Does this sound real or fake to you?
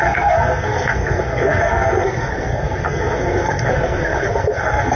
fake